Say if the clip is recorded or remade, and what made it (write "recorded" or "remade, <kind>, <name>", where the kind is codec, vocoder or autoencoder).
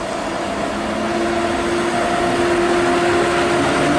recorded